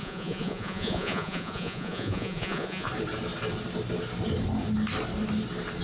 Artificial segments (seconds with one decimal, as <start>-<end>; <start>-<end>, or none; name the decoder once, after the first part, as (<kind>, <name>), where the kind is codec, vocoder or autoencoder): 0.0-2.9 (vocoder, Vocos)